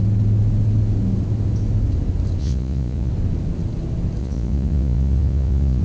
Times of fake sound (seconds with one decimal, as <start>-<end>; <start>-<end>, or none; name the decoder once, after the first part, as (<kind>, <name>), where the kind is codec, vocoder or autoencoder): 2.4-3.1 (vocoder, Vocos); 4.2-5.8